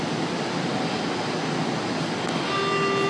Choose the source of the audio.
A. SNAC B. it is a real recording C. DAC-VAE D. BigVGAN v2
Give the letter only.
B